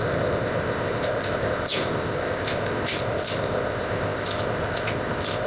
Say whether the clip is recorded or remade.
remade